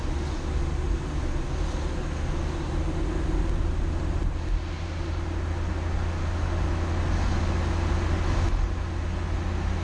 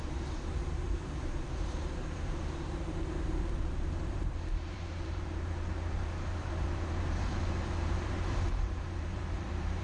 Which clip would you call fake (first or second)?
second